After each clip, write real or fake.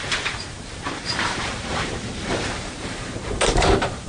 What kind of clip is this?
fake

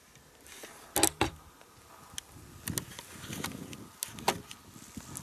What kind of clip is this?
real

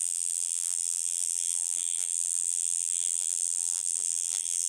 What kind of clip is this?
fake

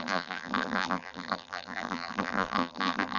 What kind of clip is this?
fake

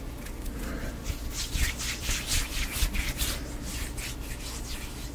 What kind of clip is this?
real